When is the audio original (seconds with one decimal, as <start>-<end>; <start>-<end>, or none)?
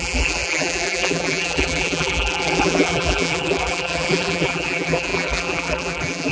none